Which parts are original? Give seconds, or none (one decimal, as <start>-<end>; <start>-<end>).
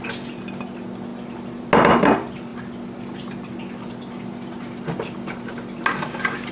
0.0-6.5